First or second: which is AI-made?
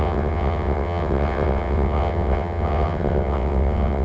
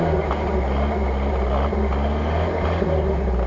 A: first